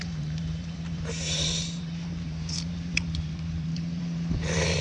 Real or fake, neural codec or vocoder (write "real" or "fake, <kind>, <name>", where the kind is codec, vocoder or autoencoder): fake, vocoder, BigVGAN v2